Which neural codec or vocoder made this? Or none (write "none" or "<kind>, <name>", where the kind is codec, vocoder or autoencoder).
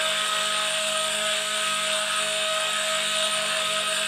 codec, SNAC